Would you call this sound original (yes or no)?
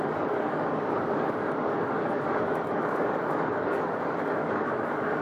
no